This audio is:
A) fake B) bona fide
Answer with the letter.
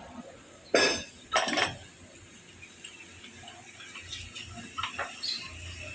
B